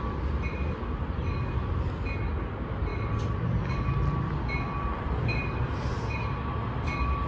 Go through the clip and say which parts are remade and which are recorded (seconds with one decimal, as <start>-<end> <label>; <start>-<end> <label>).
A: 0.0-7.3 recorded